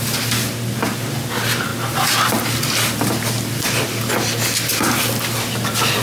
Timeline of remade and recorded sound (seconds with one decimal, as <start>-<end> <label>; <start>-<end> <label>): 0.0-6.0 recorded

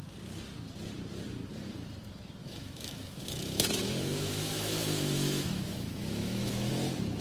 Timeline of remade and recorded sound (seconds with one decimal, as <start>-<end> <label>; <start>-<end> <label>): 0.0-2.4 recorded; 2.4-6.7 remade; 6.7-7.2 recorded

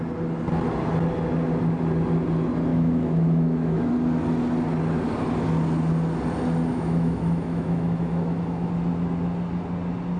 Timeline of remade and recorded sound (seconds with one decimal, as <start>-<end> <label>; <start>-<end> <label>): 0.0-2.7 recorded; 2.7-3.9 remade; 3.9-6.7 recorded; 6.7-8.7 remade; 8.7-10.2 recorded

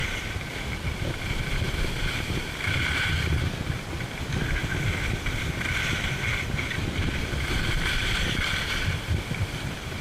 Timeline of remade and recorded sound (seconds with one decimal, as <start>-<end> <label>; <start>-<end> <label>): 0.0-10.0 recorded

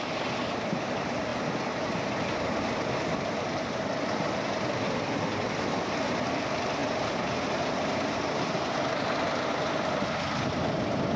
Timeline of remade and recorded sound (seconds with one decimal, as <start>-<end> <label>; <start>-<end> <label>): 0.0-11.2 recorded